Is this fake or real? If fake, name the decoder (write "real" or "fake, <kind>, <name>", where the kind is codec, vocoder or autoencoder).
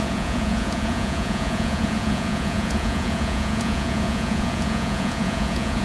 fake, vocoder, Vocos